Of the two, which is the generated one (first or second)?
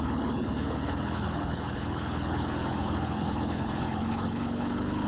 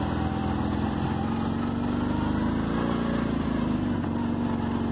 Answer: first